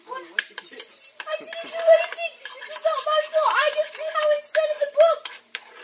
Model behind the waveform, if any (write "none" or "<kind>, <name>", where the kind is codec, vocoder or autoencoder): vocoder, BigVGAN v2